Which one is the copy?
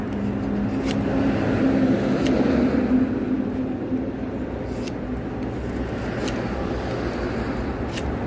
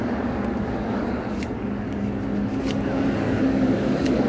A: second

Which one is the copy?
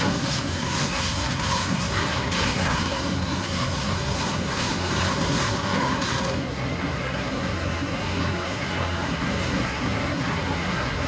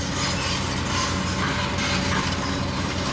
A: first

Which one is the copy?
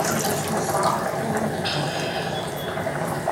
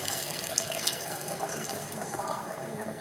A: second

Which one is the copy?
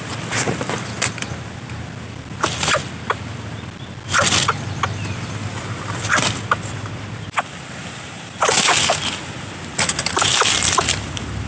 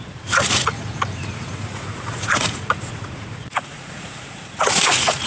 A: second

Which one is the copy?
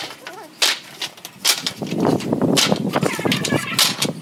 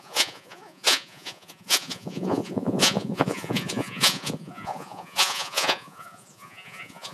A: second